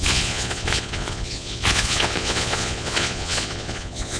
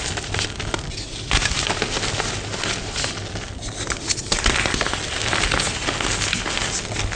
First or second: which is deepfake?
first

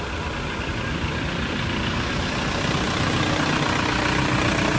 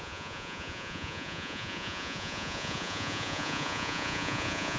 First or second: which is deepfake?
second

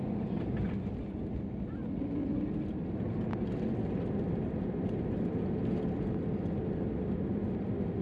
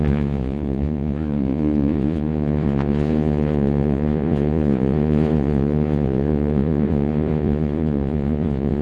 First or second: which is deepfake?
second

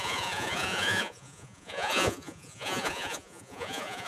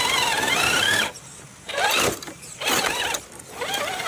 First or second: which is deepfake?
first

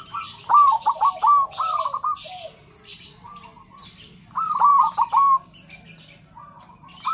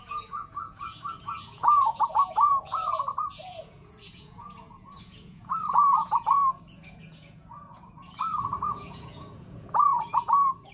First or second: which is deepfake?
second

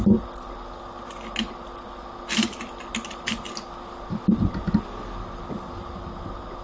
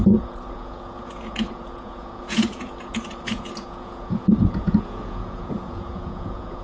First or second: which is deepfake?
second